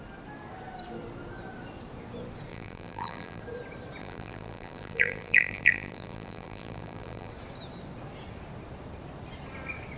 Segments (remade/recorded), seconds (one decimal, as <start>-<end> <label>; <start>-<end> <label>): 0.0-2.5 recorded; 2.5-3.4 remade; 3.4-4.0 recorded; 4.0-7.3 remade; 7.3-10.0 recorded

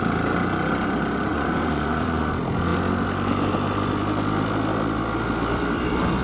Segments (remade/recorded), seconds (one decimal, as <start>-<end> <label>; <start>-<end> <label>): 0.0-1.3 recorded; 1.3-2.3 remade; 2.3-6.2 recorded